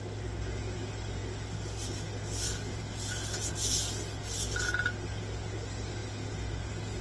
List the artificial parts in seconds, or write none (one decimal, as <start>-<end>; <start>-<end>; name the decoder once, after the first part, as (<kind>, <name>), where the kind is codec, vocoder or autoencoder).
none